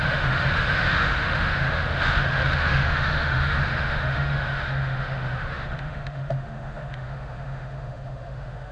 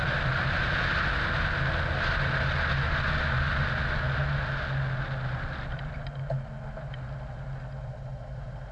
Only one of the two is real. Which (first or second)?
second